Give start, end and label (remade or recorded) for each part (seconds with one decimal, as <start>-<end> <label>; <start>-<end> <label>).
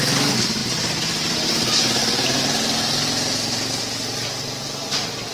0.0-5.3 recorded